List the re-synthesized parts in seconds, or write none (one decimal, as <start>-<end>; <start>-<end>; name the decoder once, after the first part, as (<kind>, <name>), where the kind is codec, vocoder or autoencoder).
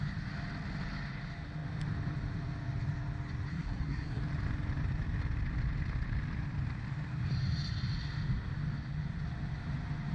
3.5-4.2 (codec, SNAC)